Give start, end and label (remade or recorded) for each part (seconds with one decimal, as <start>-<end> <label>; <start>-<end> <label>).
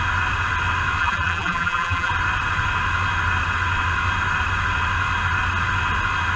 0.0-1.0 recorded; 1.0-2.1 remade; 2.1-6.4 recorded